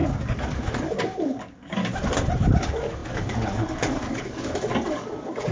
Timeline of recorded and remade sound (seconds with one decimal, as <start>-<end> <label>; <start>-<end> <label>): 0.0-1.8 remade; 1.8-2.5 recorded; 2.5-5.5 remade